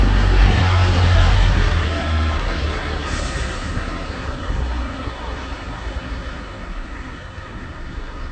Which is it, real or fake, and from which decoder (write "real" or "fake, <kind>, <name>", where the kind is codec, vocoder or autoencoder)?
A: fake, codec, SNAC